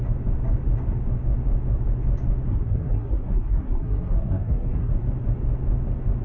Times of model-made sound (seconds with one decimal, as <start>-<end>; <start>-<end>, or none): 2.5-4.9